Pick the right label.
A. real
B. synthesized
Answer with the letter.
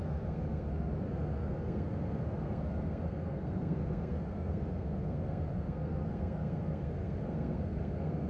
B